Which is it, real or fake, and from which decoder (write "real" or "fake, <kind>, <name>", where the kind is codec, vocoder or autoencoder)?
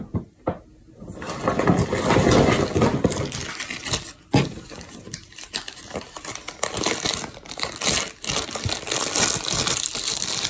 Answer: real